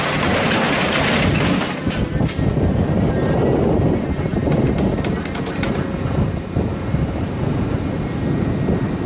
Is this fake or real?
real